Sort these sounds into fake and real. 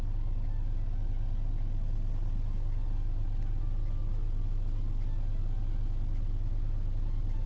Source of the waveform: real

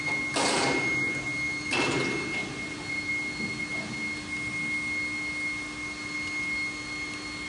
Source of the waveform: real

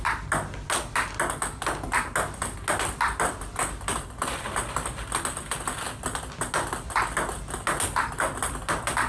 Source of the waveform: real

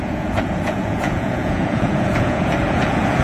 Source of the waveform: fake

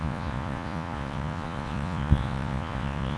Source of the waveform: fake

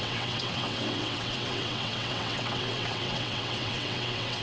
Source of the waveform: fake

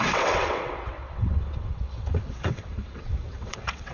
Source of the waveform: fake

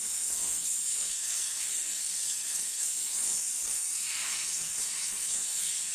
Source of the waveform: fake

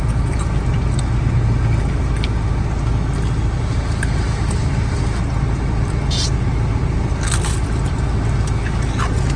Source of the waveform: real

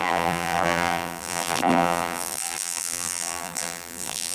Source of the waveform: fake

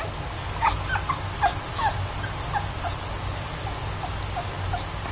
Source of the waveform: real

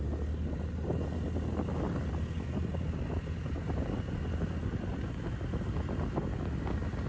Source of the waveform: real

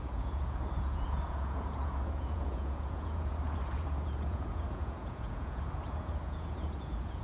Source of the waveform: fake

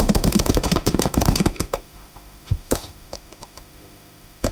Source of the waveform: fake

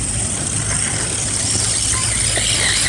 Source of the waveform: real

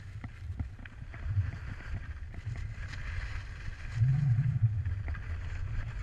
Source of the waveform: real